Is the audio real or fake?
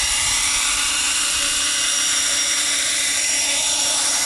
fake